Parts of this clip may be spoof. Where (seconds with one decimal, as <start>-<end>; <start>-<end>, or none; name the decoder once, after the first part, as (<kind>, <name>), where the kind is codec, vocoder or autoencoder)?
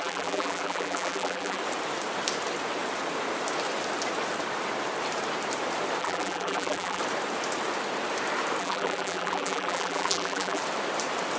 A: 0.0-1.6 (vocoder, BigVGAN v2); 6.0-7.0; 8.6-10.6